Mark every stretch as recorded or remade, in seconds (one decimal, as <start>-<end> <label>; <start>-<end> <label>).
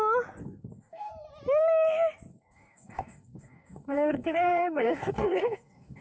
0.0-0.4 recorded; 0.4-1.1 remade; 1.1-2.3 recorded; 2.3-6.0 remade